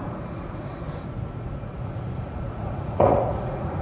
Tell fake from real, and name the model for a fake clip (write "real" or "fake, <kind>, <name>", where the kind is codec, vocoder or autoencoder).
fake, vocoder, Vocos